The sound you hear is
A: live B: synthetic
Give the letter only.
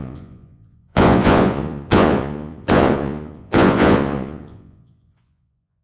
B